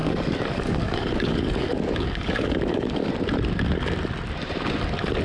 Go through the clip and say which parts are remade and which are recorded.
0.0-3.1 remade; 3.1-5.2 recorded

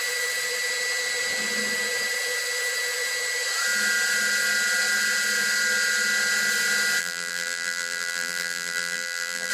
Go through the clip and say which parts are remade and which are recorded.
0.0-7.0 recorded; 7.0-9.5 remade

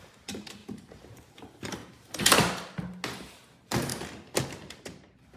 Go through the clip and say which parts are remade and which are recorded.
0.0-1.8 remade; 1.8-3.3 recorded; 3.3-3.9 remade; 3.9-4.4 recorded; 4.4-5.4 remade